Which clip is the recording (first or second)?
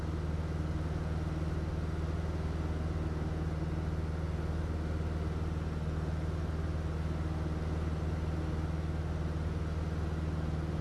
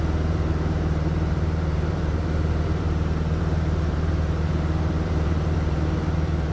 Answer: first